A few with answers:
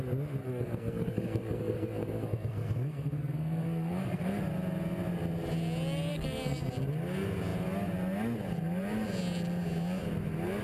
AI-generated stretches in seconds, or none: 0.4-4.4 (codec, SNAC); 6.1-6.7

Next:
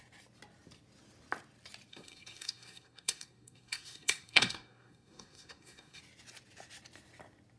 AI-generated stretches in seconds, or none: 1.9-6.0 (codec, SNAC)

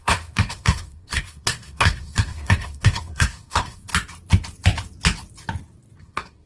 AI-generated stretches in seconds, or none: 0.0-3.9 (codec, SNAC); 6.0-6.5

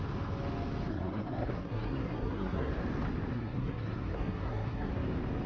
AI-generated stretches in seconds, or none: 0.9-2.7 (codec, SNAC); 3.3-4.9

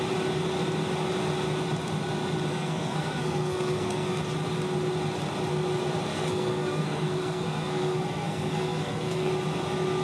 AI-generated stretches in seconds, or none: 2.5-4.2 (codec, SNAC); 6.1-9.3

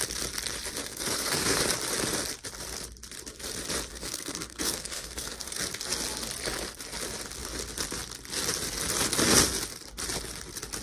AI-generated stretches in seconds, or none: 0.8-1.6 (codec, SNAC); 3.9-5.6

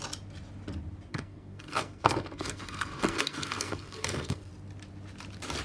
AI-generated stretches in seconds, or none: 1.1-4.5 (codec, SNAC)

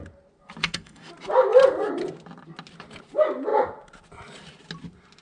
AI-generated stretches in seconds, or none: 0.6-1.1 (codec, SNAC)